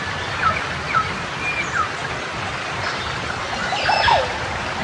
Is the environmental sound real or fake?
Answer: real